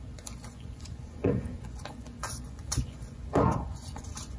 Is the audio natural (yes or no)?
no